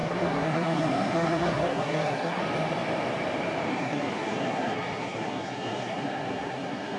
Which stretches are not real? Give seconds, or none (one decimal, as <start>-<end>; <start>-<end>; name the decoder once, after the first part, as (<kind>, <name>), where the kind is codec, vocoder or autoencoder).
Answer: 0.0-2.4 (codec, SNAC); 3.7-7.0

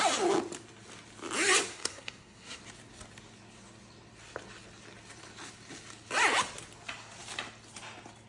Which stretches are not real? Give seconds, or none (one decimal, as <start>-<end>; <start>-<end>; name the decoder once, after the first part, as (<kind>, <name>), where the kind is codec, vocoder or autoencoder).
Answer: 1.7-2.6 (codec, SNAC)

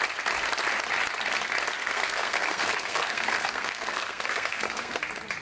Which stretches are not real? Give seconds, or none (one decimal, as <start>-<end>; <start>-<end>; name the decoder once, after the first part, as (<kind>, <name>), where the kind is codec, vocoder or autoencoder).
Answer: 1.8-5.0 (codec, SNAC)

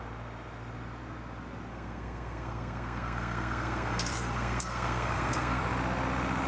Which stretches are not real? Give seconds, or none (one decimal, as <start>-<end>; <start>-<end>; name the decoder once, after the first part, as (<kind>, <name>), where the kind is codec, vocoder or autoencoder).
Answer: 1.7-5.6 (codec, SNAC)

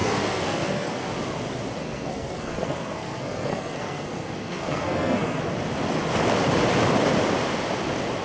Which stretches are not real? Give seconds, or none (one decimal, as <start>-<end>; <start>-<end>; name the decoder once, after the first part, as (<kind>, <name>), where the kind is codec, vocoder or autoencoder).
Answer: 0.0-1.1 (codec, SNAC); 1.8-5.4

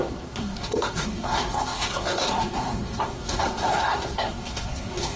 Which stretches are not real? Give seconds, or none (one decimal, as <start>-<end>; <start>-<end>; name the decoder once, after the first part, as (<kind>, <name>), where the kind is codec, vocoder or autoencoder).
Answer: 0.0-5.2 (codec, SNAC)

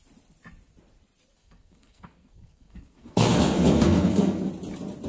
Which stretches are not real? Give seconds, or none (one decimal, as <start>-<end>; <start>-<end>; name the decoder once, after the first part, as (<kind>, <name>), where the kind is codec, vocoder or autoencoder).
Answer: 1.4-4.5 (codec, SNAC)